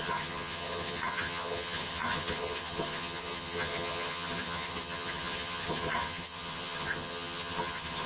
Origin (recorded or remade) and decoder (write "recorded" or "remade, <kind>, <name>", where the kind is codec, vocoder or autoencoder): remade, vocoder, HiFi-GAN